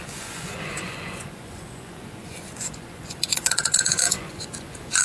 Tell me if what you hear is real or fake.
fake